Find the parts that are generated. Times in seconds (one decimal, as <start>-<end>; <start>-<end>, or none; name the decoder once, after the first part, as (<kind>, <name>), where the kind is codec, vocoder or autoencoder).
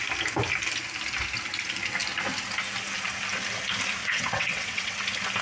4.0-5.0 (vocoder, WaveNeXt)